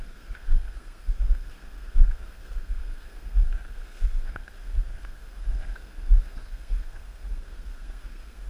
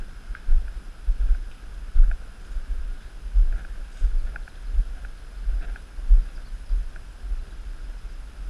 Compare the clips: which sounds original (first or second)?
second